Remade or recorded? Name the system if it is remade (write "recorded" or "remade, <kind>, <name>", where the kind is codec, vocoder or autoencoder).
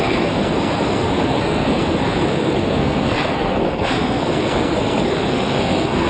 remade, codec, SNAC